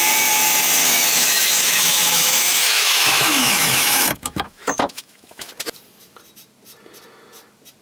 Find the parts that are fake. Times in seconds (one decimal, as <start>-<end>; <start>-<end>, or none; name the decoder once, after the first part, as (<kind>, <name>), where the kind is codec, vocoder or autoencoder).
0.8-5.5 (autoencoder, DAC-VAE)